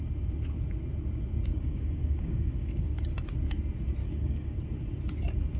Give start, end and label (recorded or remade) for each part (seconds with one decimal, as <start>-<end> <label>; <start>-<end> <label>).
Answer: 0.0-1.5 recorded; 1.5-3.0 remade; 3.0-4.0 recorded; 4.0-4.6 remade; 4.6-5.6 recorded